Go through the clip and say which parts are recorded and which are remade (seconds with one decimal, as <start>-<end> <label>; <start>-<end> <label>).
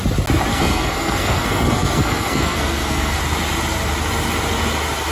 0.0-0.5 recorded; 0.5-3.2 remade; 3.2-5.1 recorded